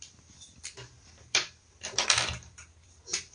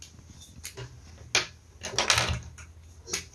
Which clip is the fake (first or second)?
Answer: first